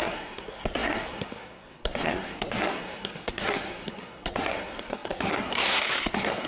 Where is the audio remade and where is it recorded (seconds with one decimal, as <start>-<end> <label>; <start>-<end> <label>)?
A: 0.0-6.5 remade